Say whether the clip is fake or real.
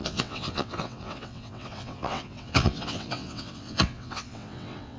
fake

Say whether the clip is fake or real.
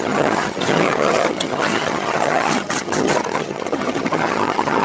fake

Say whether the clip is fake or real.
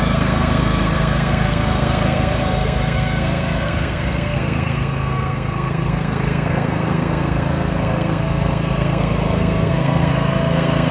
fake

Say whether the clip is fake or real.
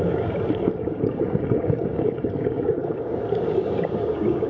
fake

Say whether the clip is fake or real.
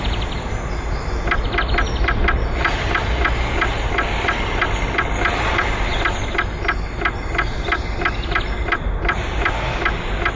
real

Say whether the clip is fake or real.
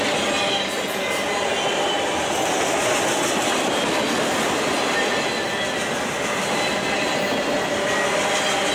real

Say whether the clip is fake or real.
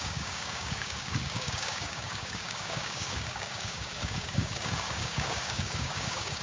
fake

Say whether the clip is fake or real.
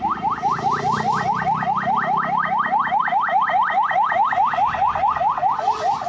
real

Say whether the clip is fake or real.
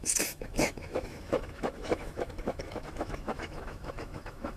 fake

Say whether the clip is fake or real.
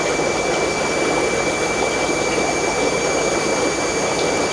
real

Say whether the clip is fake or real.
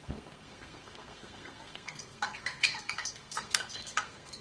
fake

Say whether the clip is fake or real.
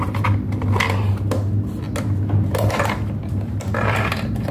real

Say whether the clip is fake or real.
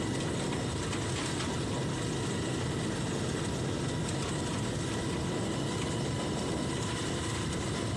real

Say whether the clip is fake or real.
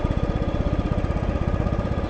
fake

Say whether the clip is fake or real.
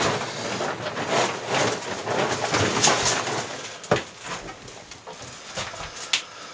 real